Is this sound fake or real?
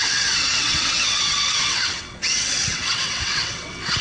fake